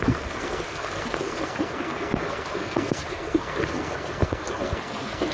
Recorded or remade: remade